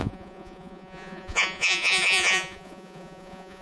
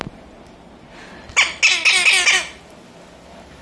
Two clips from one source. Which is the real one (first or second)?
second